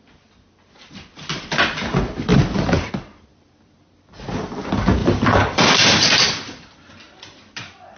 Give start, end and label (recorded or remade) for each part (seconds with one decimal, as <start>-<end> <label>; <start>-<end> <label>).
0.0-2.3 recorded; 2.3-2.9 remade; 2.9-5.0 recorded; 5.0-6.9 remade; 6.9-8.0 recorded